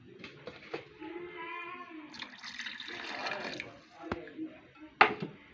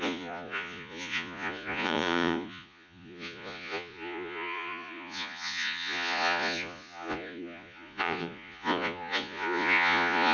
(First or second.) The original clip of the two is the first